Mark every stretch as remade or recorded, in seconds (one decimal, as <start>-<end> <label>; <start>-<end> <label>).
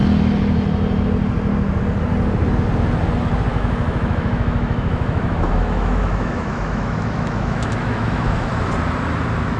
0.0-3.5 recorded; 3.5-8.7 remade; 8.7-9.6 recorded